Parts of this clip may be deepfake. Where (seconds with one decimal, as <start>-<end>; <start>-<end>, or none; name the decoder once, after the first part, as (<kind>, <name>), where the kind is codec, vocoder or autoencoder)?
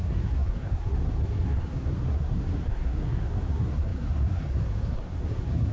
0.0-5.7 (codec, SNAC)